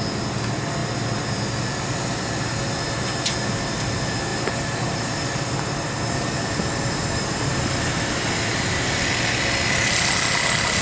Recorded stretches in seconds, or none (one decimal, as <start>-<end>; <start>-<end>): 0.0-4.3; 8.5-10.8

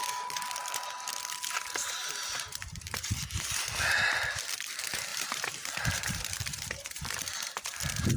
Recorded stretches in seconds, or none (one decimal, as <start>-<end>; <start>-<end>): 0.0-1.8; 3.1-5.1; 7.5-8.2

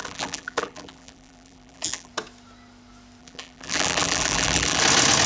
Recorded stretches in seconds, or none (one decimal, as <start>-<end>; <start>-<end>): 2.1-3.2; 4.8-5.3

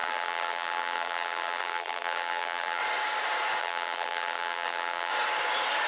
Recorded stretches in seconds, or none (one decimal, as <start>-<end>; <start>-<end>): 2.8-3.6; 5.1-5.9